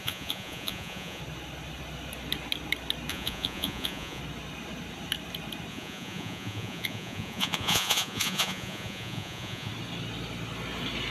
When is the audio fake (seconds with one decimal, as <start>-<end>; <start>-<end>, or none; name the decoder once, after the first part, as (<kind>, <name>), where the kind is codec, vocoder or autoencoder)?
0.0-1.2 (vocoder, Vocos); 3.1-4.2; 5.7-9.7

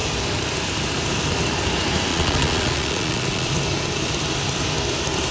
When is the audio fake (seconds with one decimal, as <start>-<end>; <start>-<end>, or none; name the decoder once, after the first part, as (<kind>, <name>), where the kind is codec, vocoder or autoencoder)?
2.1-3.5 (vocoder, Vocos)